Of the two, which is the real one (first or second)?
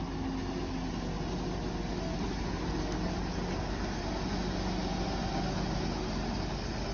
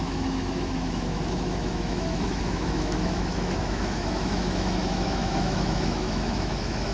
first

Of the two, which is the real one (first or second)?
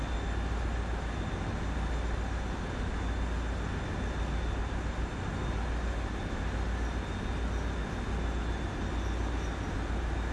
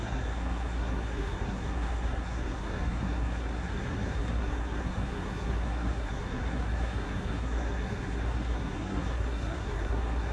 first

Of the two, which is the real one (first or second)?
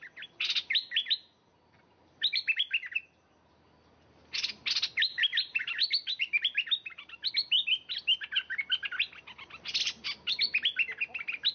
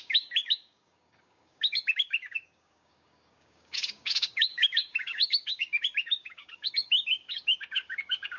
first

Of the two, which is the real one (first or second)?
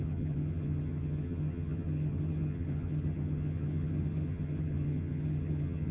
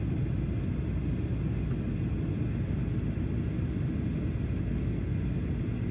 second